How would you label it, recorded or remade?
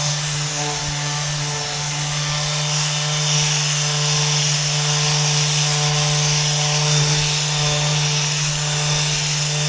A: recorded